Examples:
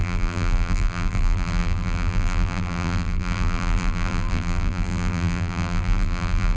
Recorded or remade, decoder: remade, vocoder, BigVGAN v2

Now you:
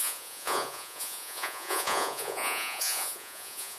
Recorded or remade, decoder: remade, vocoder, Vocos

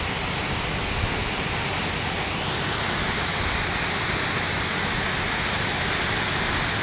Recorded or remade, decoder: recorded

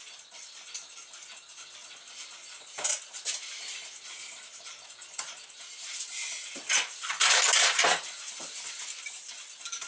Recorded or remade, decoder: recorded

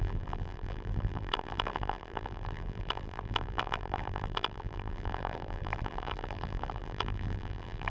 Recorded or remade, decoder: remade, vocoder, BigVGAN v2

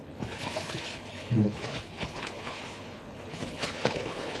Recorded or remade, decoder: remade, codec, HILCodec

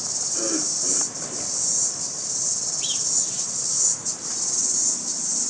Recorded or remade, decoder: recorded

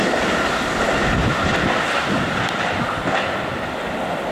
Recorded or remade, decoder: recorded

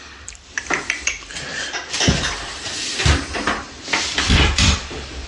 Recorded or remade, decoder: remade, vocoder, BigVGAN v2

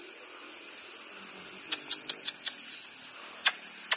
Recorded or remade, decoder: recorded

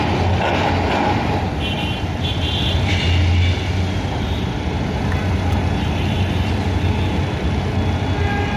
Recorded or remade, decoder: recorded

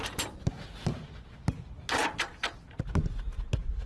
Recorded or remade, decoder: recorded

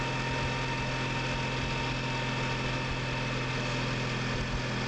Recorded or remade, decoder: recorded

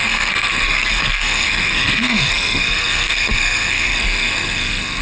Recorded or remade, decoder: remade, codec, SNAC